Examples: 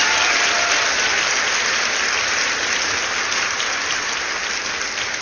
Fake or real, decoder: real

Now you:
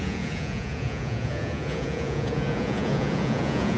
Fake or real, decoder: fake, vocoder, Vocos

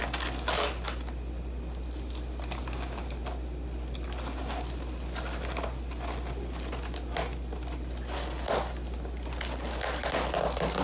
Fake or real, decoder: real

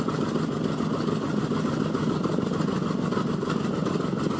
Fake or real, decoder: real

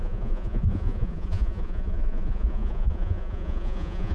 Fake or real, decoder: fake, vocoder, Vocos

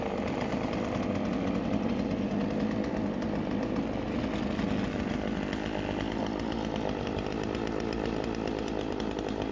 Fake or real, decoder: real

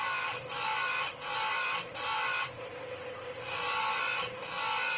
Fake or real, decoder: real